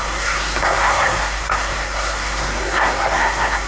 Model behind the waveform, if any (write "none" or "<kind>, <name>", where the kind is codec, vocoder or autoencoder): codec, SNAC